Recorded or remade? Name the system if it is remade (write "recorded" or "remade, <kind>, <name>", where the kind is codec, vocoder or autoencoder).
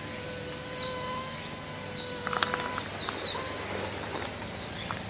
recorded